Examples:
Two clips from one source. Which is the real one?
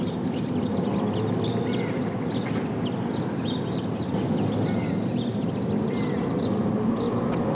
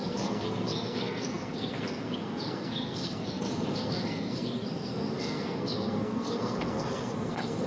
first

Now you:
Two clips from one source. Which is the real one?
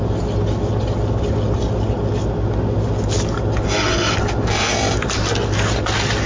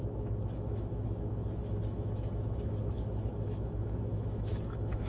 first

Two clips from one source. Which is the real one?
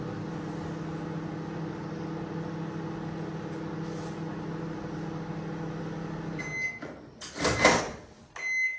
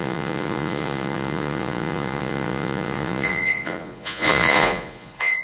first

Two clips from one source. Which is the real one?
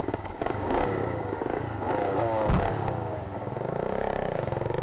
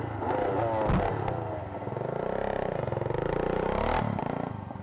second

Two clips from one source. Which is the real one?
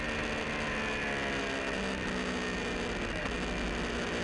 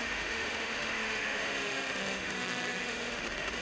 first